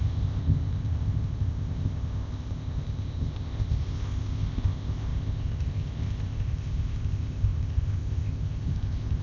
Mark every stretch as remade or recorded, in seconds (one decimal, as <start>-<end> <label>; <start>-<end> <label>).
0.0-9.2 remade